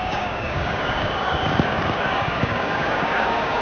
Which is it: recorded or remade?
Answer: remade